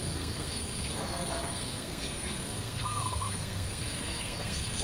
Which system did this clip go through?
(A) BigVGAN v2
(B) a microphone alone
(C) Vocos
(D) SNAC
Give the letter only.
D